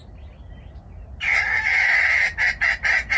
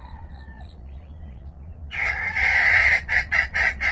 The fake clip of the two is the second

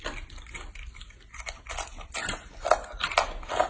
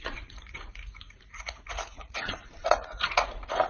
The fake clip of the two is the second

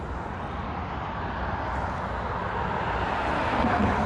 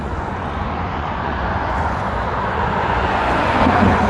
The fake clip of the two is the second